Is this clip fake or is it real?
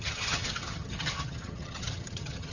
fake